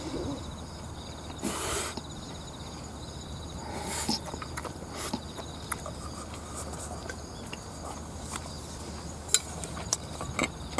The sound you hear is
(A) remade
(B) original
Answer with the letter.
B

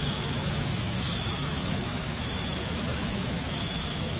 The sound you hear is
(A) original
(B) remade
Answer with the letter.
B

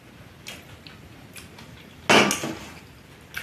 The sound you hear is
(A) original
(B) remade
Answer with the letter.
A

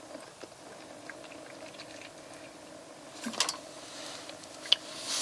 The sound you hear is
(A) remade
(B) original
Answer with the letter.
B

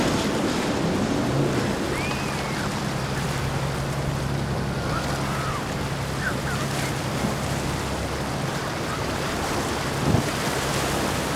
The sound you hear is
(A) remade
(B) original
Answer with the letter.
B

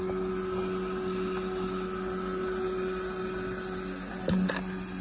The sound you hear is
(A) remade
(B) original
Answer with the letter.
B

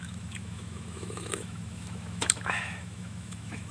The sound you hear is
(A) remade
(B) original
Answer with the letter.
A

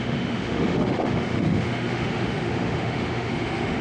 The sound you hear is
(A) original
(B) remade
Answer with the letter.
B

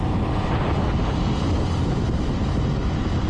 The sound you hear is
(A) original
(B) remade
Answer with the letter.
A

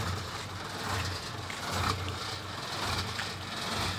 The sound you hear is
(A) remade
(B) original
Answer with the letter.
B